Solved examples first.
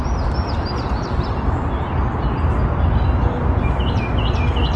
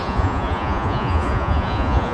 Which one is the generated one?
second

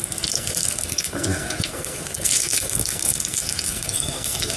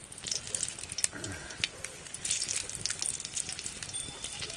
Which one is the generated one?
first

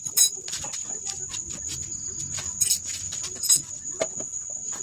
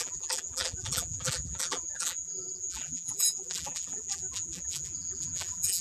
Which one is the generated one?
second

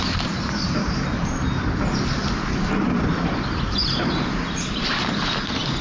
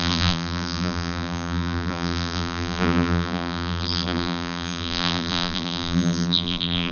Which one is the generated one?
second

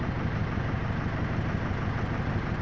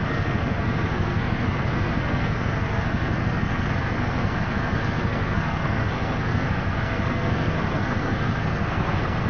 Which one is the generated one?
second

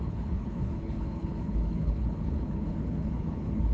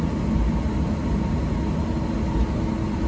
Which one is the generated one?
first